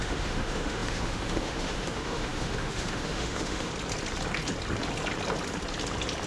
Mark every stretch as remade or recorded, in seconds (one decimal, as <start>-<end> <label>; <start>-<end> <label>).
0.0-3.7 remade; 3.7-6.3 recorded